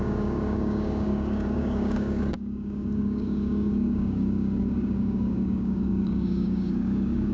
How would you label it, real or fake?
fake